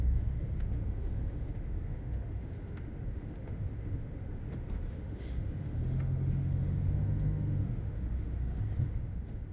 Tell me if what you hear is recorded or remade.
remade